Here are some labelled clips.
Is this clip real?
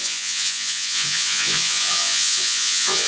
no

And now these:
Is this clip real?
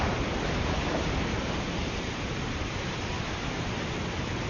yes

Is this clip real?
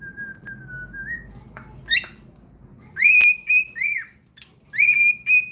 yes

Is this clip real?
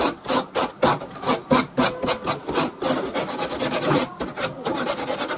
yes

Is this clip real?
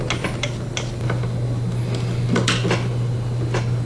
yes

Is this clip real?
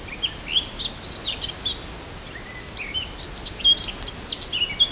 yes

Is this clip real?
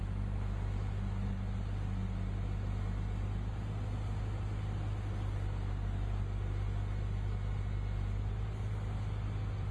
yes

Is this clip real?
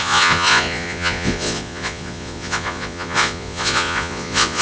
no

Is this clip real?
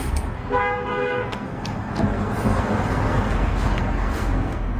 no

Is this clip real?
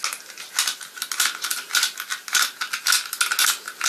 yes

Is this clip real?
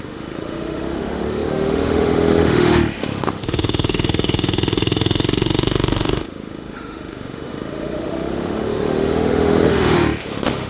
no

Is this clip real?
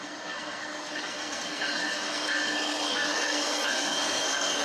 no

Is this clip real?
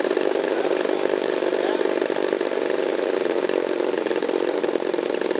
no